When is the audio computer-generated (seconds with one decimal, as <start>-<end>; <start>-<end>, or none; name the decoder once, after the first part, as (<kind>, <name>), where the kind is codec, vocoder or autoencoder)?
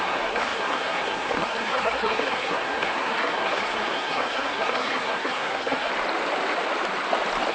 0.0-5.9 (codec, SNAC)